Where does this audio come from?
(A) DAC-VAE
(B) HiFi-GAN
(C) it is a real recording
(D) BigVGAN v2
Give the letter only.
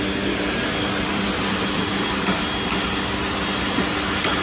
C